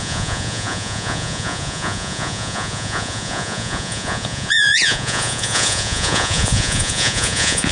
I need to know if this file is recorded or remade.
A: remade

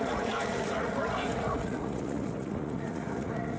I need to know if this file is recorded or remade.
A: remade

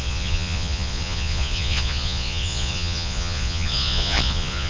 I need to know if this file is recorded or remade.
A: remade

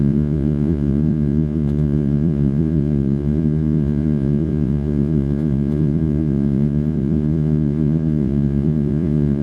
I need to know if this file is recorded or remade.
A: remade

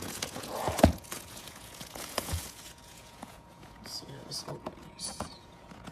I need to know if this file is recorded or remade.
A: remade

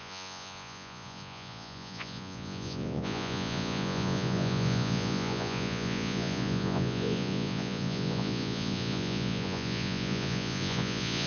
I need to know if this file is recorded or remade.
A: remade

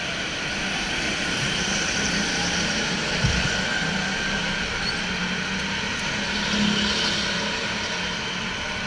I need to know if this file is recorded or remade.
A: recorded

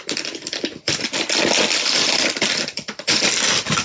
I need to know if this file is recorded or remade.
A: recorded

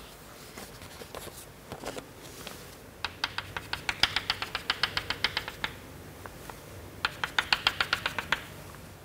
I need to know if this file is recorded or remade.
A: recorded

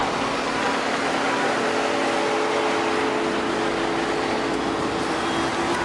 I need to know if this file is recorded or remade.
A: recorded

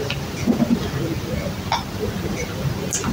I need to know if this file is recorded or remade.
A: recorded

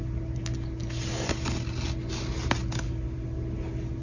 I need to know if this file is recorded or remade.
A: recorded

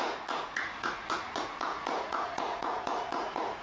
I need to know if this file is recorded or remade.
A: remade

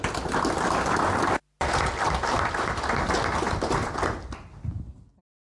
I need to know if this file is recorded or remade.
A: recorded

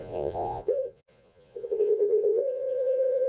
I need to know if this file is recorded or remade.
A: remade